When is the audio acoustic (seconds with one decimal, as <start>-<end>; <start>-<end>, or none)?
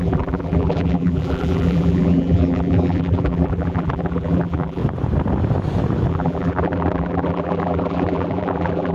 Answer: 4.8-6.1